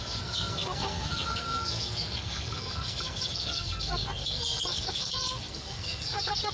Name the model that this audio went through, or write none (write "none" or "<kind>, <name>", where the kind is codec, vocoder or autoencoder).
codec, SNAC